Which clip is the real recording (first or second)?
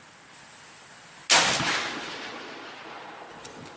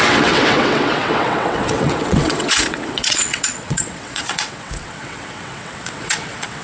first